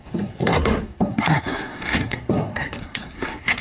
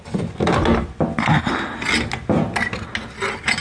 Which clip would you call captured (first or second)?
second